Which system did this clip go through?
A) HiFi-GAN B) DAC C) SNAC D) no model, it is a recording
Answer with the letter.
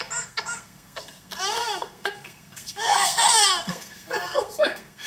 C